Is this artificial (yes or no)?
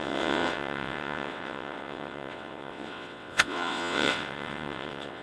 yes